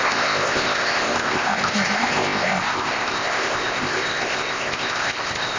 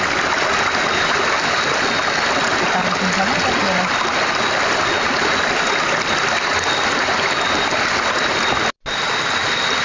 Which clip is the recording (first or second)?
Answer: second